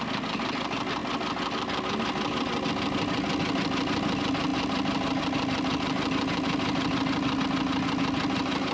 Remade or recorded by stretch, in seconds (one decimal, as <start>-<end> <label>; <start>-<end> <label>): 0.0-8.7 recorded